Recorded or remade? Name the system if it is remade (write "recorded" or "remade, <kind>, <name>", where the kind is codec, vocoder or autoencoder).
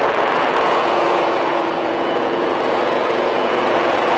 remade, vocoder, Vocos